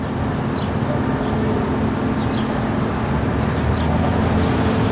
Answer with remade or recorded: recorded